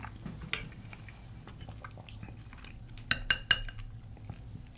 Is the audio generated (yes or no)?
no